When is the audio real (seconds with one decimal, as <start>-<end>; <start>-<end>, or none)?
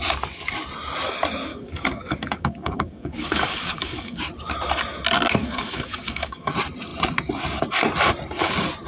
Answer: 0.0-1.5; 4.2-5.4; 6.5-8.9